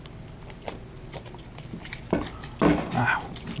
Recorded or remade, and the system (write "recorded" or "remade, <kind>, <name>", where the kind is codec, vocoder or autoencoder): recorded